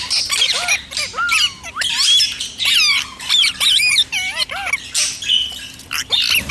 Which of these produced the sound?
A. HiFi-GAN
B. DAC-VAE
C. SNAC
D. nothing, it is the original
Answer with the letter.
D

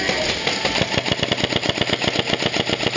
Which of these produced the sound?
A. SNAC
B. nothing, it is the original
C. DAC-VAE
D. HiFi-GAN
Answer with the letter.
B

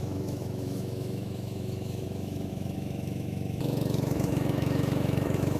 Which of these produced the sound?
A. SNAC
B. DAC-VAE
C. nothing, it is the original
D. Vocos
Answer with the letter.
B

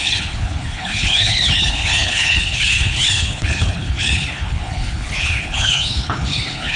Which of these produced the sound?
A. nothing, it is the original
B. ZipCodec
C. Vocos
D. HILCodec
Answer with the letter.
D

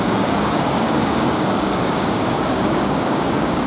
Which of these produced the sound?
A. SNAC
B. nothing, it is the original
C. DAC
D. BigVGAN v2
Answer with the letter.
C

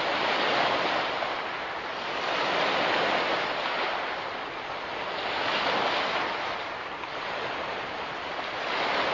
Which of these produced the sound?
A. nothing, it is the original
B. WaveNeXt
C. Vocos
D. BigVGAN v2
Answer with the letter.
A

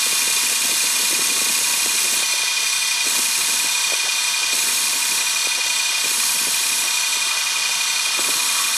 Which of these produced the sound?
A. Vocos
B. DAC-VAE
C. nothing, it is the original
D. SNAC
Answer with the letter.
C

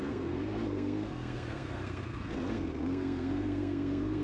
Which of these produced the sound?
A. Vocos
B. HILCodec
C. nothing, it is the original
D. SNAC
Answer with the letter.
D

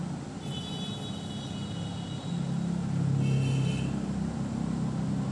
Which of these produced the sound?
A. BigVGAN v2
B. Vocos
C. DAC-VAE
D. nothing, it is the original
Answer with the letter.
D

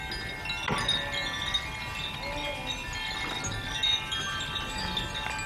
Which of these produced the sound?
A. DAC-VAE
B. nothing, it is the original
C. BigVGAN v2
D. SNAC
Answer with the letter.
B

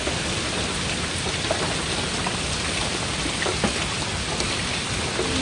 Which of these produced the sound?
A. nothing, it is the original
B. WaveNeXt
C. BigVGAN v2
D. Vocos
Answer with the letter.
A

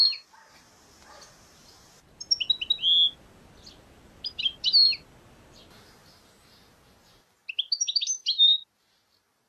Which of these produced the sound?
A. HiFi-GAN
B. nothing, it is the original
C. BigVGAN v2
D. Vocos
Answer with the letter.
B